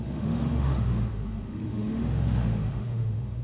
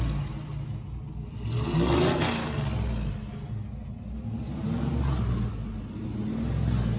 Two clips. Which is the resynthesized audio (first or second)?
first